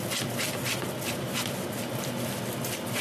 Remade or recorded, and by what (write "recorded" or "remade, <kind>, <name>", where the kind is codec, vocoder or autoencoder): recorded